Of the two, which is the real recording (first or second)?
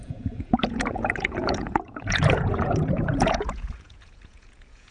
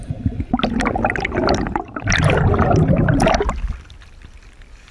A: second